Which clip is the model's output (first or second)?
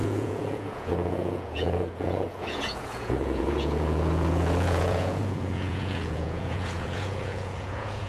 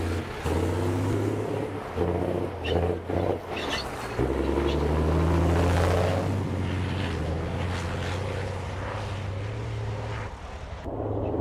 first